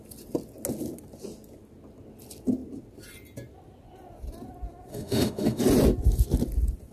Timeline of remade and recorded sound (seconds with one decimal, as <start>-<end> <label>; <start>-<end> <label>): 0.0-4.9 recorded; 4.9-5.6 remade; 5.6-6.9 recorded